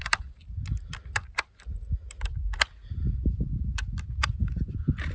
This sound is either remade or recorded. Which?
recorded